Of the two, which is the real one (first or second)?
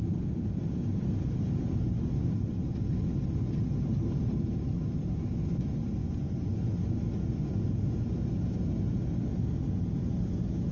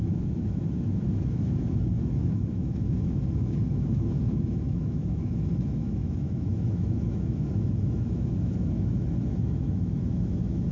first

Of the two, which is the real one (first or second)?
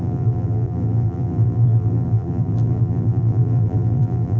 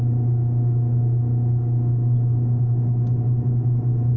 second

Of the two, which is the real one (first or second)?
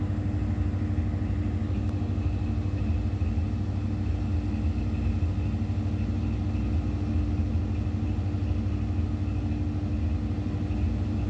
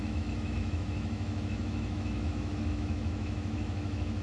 first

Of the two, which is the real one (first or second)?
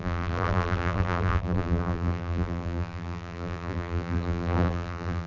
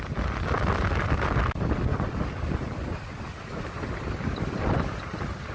second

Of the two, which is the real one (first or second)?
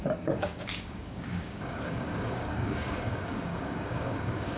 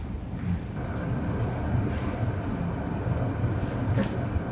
second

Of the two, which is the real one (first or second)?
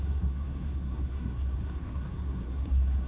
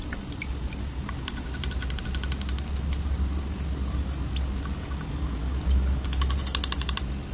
second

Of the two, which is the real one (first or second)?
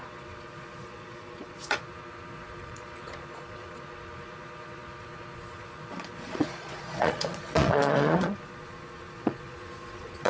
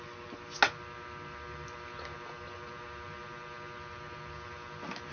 second